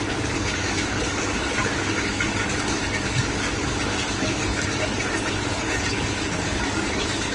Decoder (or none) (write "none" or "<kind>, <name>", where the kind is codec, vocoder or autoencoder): codec, DAC